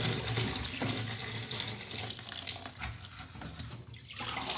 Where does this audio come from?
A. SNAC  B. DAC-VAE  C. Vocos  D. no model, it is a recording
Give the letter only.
D